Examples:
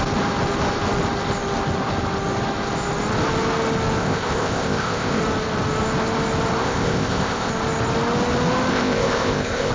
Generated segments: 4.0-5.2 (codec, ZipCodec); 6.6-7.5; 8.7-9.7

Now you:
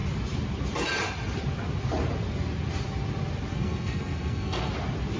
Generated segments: 3.5-4.7 (codec, SNAC)

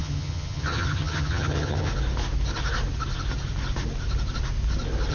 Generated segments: 0.0-1.9 (vocoder, HiFi-GAN)

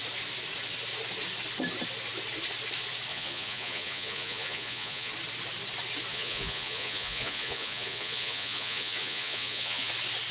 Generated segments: 3.1-5.1 (vocoder, Vocos); 6.1-9.9